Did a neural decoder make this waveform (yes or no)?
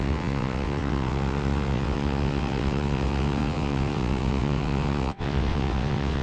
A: yes